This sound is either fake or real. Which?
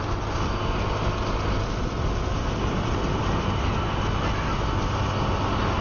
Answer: real